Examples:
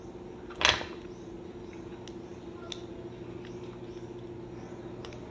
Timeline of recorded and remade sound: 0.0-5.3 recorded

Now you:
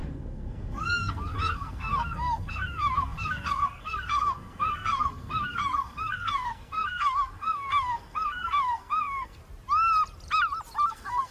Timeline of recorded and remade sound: 0.0-9.4 remade; 9.4-10.9 recorded; 10.9-11.3 remade

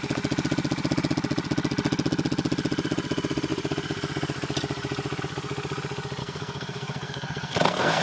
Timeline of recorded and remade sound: 0.0-6.2 recorded; 6.2-8.0 remade

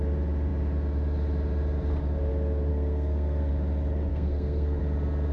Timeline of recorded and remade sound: 0.0-2.7 recorded; 2.7-3.5 remade; 3.5-4.1 recorded; 4.1-4.8 remade; 4.8-5.3 recorded

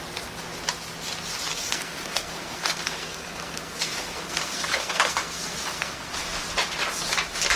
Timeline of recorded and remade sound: 0.0-1.5 recorded; 1.5-6.1 remade; 6.1-7.6 recorded